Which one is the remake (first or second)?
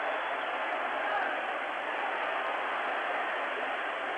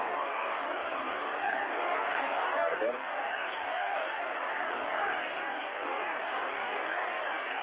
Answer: second